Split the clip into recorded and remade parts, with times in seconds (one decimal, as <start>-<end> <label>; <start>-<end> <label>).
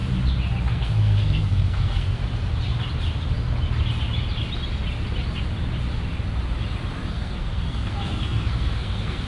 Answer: 0.0-0.7 recorded; 0.7-2.2 remade; 2.2-7.1 recorded; 7.1-9.3 remade